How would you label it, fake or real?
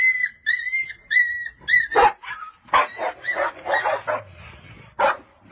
real